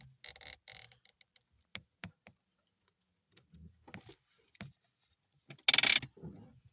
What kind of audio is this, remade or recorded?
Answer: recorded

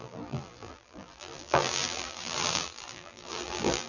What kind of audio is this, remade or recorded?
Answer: remade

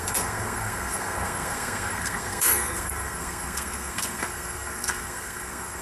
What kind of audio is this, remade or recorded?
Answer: remade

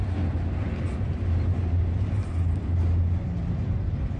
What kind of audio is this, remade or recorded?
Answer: recorded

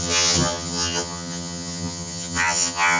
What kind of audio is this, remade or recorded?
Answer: remade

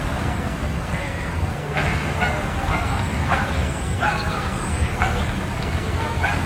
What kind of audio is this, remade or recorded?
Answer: remade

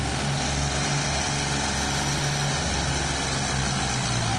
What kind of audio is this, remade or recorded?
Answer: recorded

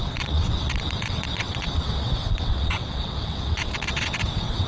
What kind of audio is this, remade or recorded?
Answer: remade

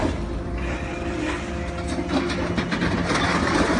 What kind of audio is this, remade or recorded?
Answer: recorded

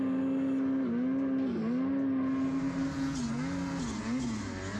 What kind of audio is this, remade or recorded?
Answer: recorded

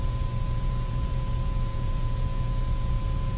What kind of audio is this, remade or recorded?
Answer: remade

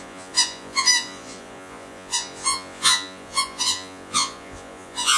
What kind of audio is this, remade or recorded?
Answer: remade